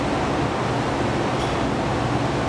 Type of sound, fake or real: real